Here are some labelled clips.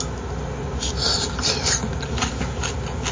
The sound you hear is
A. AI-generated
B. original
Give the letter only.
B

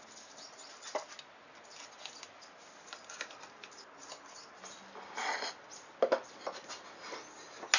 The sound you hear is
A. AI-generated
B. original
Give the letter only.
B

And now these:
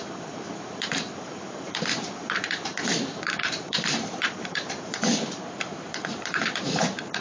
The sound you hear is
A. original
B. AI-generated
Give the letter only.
B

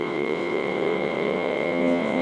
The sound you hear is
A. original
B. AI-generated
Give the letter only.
B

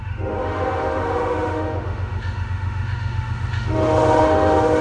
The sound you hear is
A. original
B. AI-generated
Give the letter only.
B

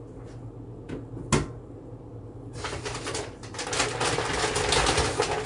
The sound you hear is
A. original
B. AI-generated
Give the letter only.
A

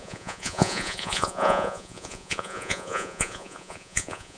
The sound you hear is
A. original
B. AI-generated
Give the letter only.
B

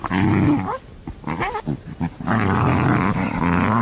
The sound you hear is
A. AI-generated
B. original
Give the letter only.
B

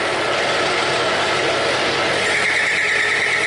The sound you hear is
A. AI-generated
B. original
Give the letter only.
B